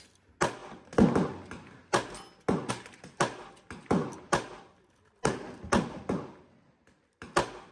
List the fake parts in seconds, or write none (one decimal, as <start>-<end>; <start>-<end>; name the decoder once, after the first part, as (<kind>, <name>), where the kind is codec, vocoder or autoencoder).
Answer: none